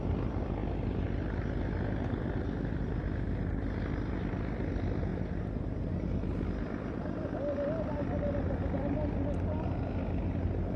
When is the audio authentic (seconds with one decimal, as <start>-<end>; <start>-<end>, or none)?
0.0-10.8